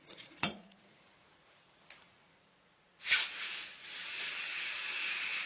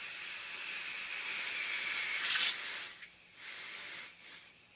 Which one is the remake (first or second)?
first